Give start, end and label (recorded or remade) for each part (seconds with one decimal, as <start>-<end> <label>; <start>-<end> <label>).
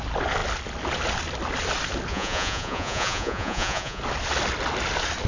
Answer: 0.0-2.1 recorded; 2.1-4.0 remade; 4.0-5.3 recorded